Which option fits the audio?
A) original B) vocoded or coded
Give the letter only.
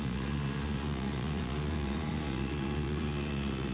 B